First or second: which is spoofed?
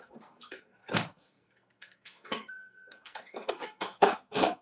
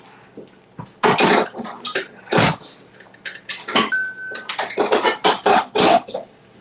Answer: first